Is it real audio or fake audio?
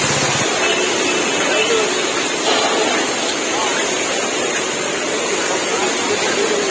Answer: real